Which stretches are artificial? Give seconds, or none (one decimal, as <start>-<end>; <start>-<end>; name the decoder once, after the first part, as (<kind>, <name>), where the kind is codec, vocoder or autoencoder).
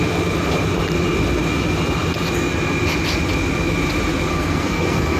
4.3-5.2 (codec, SNAC)